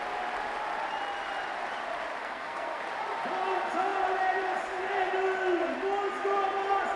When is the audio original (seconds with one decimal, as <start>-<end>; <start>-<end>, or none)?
0.0-2.2; 2.8-7.0